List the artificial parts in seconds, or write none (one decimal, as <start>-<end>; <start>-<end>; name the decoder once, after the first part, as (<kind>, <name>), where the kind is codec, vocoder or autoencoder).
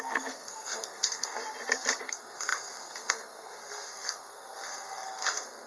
0.0-1.4 (codec, SNAC); 2.0-5.7